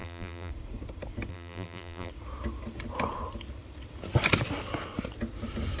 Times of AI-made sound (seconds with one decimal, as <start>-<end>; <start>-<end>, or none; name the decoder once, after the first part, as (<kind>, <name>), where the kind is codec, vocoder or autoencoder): 0.0-0.5 (vocoder, BigVGAN v2); 1.3-2.1